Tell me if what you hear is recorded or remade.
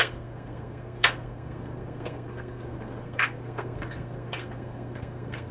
remade